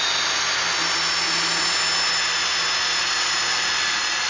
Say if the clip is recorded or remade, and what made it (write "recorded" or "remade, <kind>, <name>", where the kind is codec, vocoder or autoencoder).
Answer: recorded